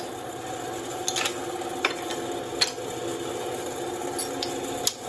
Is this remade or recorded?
recorded